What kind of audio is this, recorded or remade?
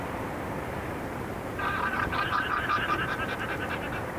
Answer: remade